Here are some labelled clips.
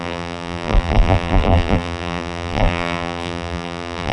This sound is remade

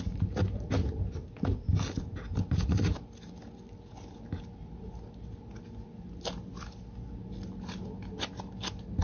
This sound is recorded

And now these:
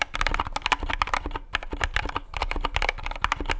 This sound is recorded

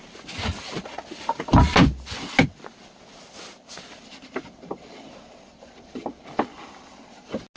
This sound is recorded